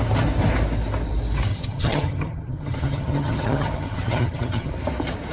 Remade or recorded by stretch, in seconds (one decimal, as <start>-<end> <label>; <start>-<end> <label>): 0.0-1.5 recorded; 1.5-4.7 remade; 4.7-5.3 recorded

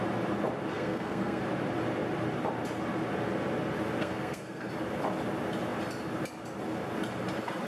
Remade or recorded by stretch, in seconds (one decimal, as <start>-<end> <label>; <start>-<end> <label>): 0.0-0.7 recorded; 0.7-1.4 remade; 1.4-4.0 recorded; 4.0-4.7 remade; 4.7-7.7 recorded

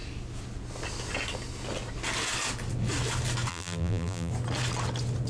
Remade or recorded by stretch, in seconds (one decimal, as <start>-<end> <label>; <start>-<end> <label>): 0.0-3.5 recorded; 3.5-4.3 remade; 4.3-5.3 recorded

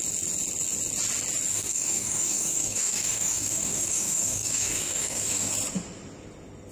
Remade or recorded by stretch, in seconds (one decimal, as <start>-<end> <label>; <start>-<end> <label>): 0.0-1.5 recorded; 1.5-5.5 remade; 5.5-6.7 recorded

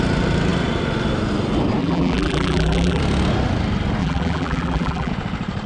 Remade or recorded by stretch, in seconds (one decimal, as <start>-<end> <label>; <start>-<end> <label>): 0.0-1.8 recorded; 1.8-3.0 remade; 3.0-4.0 recorded; 4.0-5.1 remade; 5.1-5.7 recorded